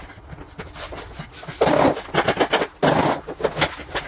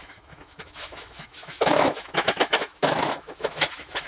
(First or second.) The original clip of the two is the first